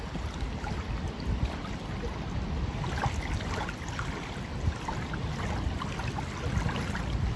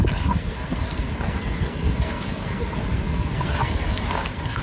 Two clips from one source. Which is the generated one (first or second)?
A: second